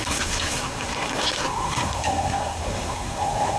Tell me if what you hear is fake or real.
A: fake